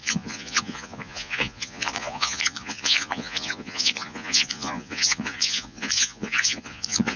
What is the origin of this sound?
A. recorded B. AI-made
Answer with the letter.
B